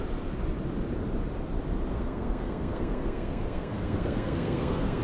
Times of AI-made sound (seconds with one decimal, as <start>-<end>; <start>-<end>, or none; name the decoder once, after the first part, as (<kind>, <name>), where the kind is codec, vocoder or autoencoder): 1.9-5.0 (codec, SNAC)